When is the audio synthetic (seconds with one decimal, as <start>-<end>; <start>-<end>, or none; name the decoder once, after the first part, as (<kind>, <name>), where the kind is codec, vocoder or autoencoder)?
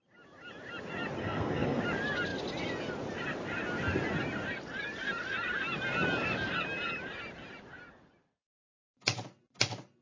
1.2-1.8 (codec, SNAC)